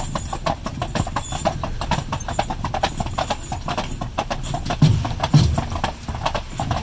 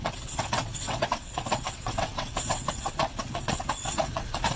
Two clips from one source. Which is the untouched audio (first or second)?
first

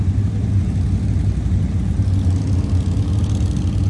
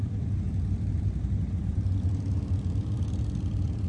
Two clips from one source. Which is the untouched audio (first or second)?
first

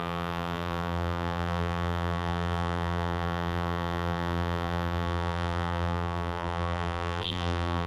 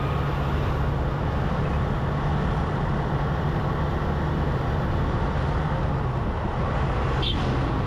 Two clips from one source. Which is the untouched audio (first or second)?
second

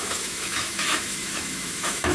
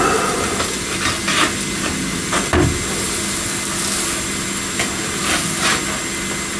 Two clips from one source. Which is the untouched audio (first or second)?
second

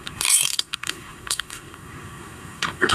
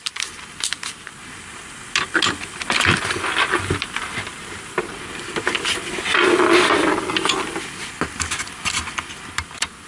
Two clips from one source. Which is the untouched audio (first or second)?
second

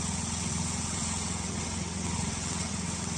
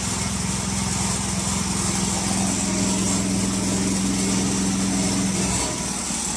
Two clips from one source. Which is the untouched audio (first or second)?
second